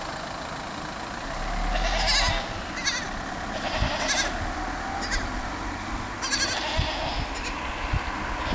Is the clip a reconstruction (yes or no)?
no